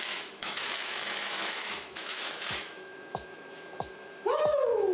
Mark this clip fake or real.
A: fake